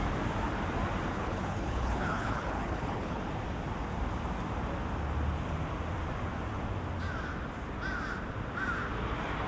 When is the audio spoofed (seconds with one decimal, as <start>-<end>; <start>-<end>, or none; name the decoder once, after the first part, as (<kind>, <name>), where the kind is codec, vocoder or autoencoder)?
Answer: 1.1-3.2 (codec, HILCodec)